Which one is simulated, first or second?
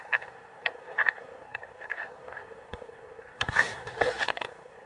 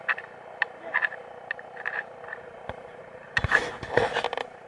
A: first